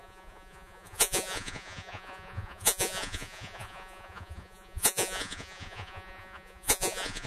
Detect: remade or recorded remade